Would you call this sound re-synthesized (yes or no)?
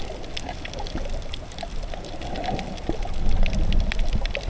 no